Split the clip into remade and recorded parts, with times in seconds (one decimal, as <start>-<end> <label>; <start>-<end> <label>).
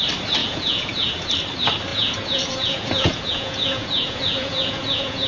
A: 0.0-0.4 recorded; 0.4-1.3 remade; 1.3-1.9 recorded; 1.9-5.3 remade